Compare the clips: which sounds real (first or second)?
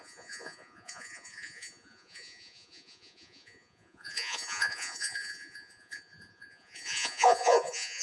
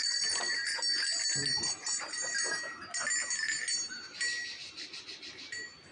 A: second